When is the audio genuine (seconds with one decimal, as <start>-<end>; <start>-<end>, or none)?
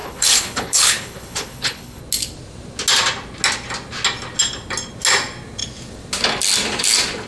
2.0-7.3